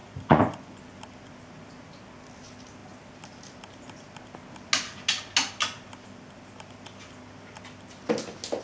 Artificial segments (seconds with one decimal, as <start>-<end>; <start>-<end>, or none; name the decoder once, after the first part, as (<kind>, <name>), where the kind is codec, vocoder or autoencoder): 0.0-0.8 (vocoder, Vocos)